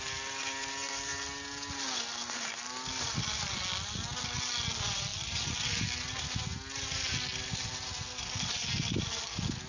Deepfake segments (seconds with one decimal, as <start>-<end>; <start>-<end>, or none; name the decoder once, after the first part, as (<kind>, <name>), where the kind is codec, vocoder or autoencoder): none